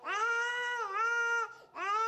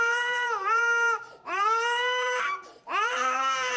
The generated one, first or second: second